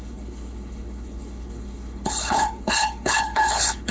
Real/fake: fake